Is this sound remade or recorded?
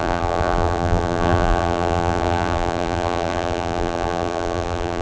remade